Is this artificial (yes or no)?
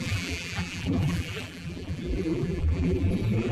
yes